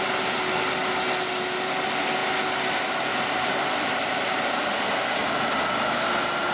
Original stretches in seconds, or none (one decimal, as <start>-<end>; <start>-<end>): 0.0-6.5